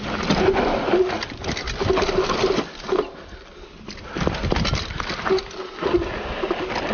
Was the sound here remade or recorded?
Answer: recorded